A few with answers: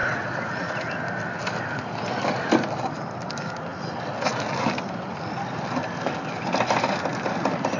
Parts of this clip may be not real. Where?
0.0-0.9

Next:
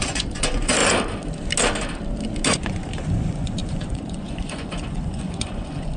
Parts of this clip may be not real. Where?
0.0-0.8; 2.5-6.0

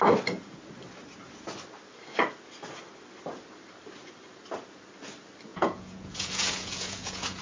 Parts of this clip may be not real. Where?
5.5-7.4